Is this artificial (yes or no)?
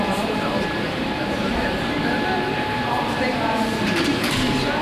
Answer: yes